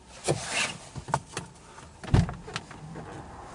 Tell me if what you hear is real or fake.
real